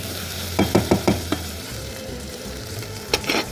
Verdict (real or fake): fake